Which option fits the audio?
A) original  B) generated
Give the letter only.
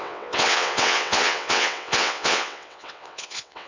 B